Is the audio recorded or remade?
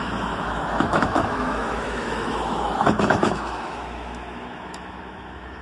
remade